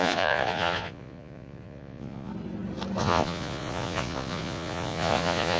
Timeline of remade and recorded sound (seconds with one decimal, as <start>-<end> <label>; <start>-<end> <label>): 0.0-2.3 remade; 2.3-3.0 recorded; 3.0-5.6 remade